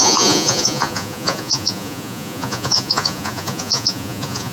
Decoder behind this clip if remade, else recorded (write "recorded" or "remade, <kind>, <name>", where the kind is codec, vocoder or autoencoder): remade, vocoder, Vocos